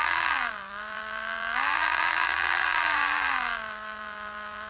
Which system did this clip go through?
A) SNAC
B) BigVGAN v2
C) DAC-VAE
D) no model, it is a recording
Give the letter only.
B